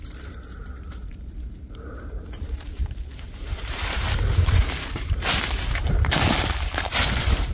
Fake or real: fake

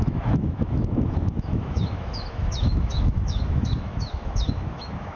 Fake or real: fake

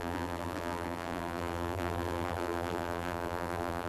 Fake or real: fake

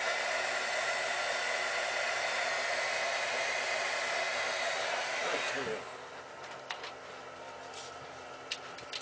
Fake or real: fake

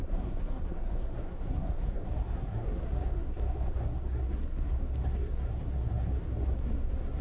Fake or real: fake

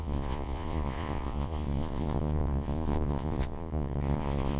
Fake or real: fake